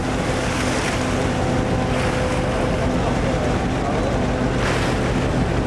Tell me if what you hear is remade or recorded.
recorded